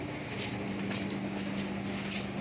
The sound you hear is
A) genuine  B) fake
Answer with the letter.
A